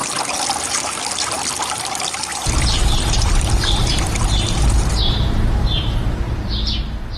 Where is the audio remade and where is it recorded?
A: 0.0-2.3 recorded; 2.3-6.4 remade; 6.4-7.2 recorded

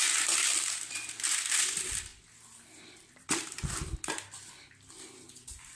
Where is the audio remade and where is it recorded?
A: 0.0-0.5 recorded; 0.5-1.3 remade; 1.3-2.1 recorded; 2.1-5.8 remade

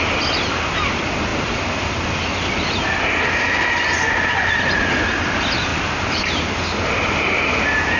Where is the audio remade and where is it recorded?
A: 0.0-5.7 recorded; 5.7-6.6 remade; 6.6-8.0 recorded

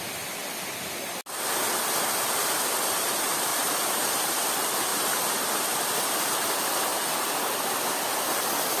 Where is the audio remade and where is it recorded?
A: 0.0-3.5 recorded; 3.5-4.4 remade; 4.4-4.9 recorded; 4.9-5.8 remade; 5.8-8.8 recorded

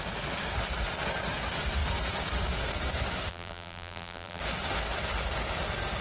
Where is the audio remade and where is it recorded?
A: 0.0-3.3 recorded; 3.3-4.4 remade; 4.4-6.0 recorded

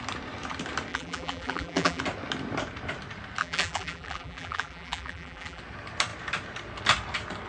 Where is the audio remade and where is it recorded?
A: 0.0-0.9 recorded; 0.9-2.0 remade; 2.0-3.4 recorded; 3.4-5.6 remade; 5.6-7.5 recorded

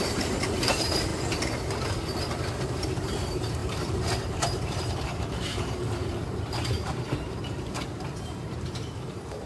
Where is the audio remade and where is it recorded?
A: 0.0-1.1 remade; 1.1-2.2 recorded; 2.2-9.5 remade

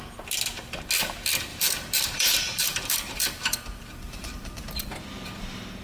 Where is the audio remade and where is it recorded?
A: 0.0-1.5 recorded; 1.5-4.7 remade; 4.7-5.8 recorded